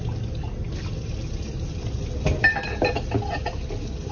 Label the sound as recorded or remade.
recorded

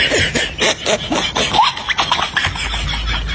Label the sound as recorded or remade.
recorded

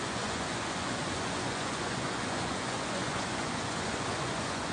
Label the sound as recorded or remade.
remade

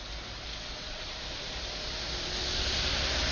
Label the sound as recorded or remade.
recorded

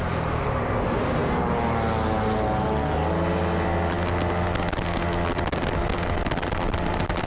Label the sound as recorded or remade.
recorded